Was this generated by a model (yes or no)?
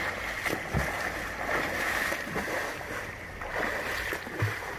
no